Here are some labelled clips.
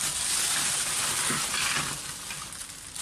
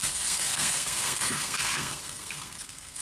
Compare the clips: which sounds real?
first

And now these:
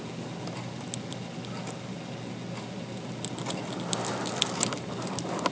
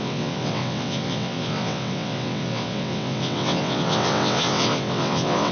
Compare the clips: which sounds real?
first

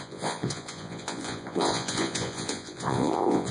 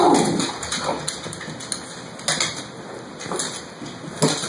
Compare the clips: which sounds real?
second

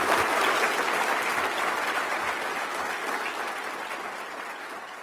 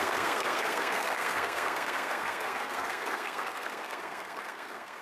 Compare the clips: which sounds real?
first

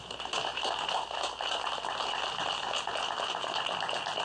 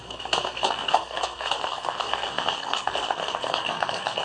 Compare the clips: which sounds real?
first